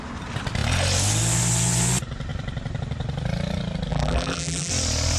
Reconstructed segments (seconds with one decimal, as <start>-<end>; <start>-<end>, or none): 3.9-4.7